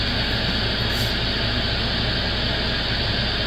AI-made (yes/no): no